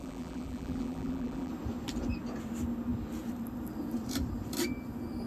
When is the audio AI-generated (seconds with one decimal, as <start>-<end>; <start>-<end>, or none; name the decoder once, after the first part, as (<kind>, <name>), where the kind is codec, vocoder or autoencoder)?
0.0-1.5 (vocoder, BigVGAN v2)

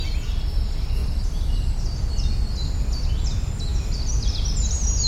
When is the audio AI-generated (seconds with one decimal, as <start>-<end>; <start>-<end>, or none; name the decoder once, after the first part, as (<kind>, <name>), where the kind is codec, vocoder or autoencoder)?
1.0-1.8 (vocoder, BigVGAN v2)